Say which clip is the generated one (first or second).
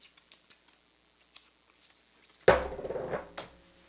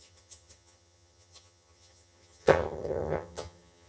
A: second